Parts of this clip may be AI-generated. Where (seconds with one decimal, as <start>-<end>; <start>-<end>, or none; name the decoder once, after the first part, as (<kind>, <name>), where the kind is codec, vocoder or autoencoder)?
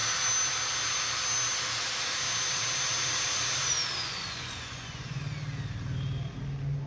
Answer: 4.0-5.2 (vocoder, Vocos)